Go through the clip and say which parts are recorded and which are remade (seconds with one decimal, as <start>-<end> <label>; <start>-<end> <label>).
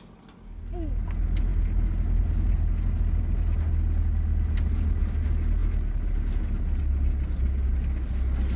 0.0-8.6 recorded